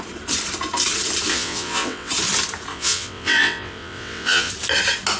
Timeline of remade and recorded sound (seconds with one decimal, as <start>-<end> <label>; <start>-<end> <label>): 0.0-1.3 recorded; 1.3-2.1 remade; 2.1-2.7 recorded; 2.7-4.5 remade; 4.5-5.2 recorded